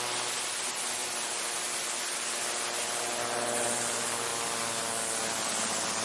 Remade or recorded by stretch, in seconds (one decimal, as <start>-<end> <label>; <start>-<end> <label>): 0.0-1.0 recorded; 1.0-2.5 remade; 2.5-6.0 recorded